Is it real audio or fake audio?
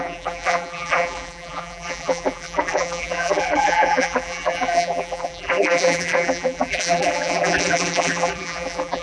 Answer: fake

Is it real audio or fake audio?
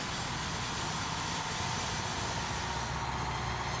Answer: real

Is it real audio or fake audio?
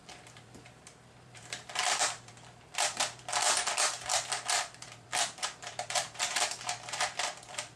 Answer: fake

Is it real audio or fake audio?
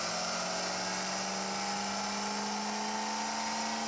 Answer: real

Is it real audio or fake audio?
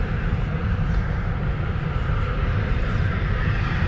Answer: fake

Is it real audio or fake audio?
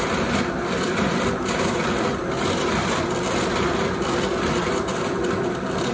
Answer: fake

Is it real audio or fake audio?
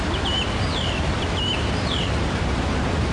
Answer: fake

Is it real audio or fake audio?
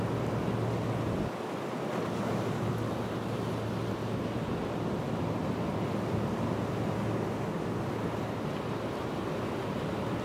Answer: real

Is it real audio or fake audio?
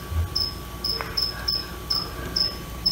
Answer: real